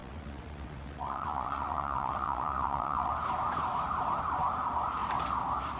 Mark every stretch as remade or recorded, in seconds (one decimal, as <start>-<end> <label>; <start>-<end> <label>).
0.0-3.1 remade; 3.1-5.8 recorded